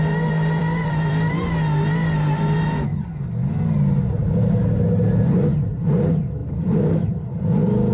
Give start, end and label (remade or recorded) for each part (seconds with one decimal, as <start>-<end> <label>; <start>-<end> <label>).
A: 0.0-0.6 recorded; 0.6-1.3 remade; 1.3-6.4 recorded; 6.4-7.1 remade; 7.1-7.9 recorded